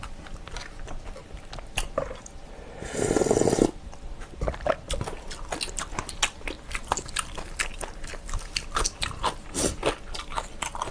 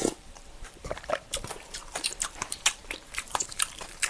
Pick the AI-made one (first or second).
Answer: second